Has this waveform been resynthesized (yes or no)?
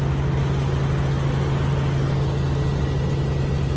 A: no